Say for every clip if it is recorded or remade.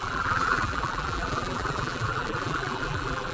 remade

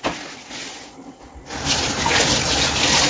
recorded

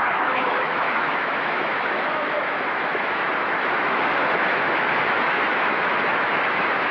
remade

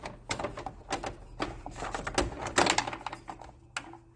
recorded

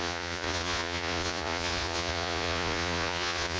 remade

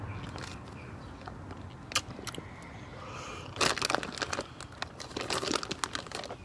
recorded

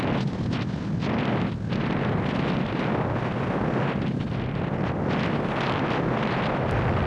recorded